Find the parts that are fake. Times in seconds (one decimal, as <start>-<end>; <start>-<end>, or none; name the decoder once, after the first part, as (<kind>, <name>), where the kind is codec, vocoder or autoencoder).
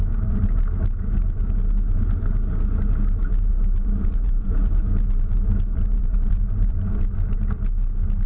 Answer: 3.5-6.9 (vocoder, BigVGAN v2)